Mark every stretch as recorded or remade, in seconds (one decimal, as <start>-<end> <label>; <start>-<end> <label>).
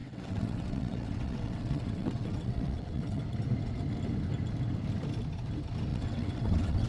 0.0-3.2 remade; 3.2-5.9 recorded; 5.9-6.9 remade